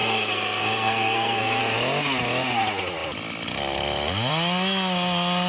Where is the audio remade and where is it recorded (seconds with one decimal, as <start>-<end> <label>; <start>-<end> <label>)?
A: 0.0-1.6 remade; 1.6-5.5 recorded